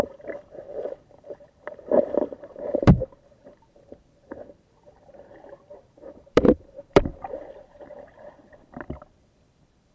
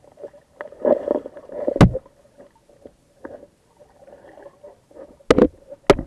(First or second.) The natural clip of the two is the second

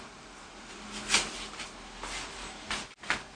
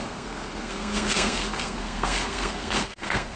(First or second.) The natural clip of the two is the first